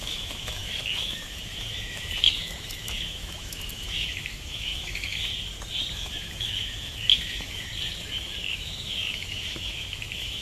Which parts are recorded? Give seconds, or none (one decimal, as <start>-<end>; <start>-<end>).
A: 5.3-5.9; 7.7-8.5